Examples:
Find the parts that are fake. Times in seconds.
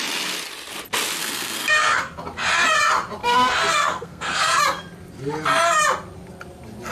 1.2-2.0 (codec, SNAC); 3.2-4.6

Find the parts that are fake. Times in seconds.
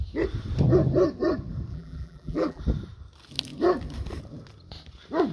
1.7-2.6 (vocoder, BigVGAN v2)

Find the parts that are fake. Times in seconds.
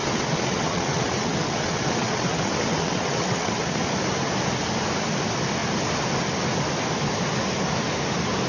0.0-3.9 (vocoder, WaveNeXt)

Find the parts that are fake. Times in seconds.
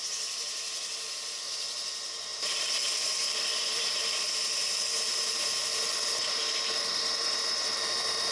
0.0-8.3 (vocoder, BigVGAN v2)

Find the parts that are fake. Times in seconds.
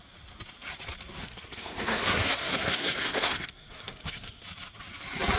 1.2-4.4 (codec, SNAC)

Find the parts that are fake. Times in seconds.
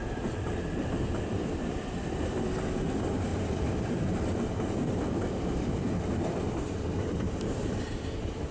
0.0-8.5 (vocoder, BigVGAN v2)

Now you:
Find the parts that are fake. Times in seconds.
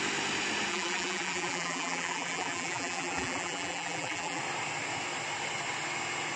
0.7-4.4 (vocoder, BigVGAN v2)